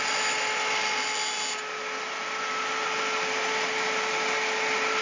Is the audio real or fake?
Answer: real